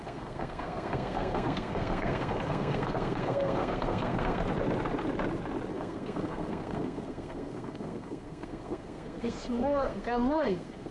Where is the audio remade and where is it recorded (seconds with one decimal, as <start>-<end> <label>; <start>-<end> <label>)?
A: 0.0-4.4 remade; 4.4-5.7 recorded; 5.7-10.9 remade